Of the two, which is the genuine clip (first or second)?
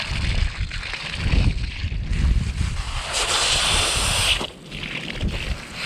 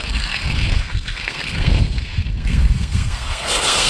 first